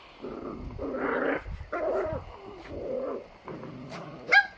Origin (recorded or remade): recorded